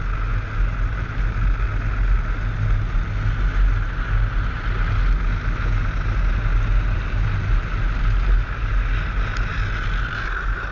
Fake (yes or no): no